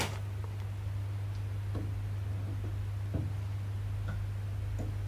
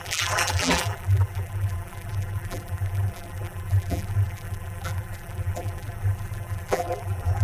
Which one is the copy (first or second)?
second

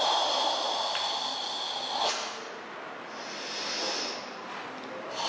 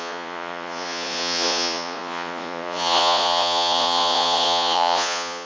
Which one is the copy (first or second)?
second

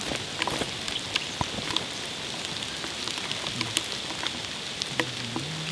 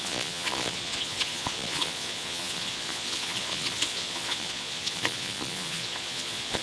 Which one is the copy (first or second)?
second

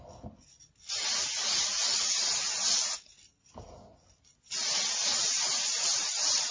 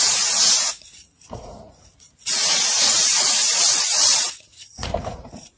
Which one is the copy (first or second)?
second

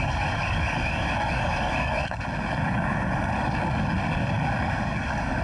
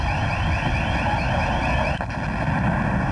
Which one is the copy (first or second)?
first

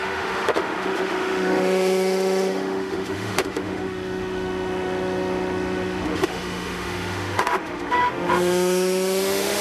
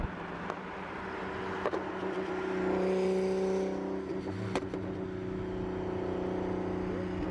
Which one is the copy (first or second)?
first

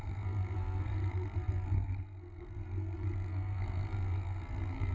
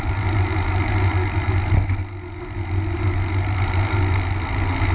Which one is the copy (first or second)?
first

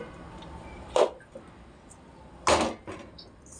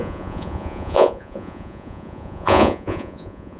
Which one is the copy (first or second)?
second